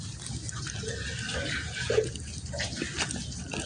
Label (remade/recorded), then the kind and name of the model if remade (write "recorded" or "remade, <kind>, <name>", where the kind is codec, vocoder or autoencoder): recorded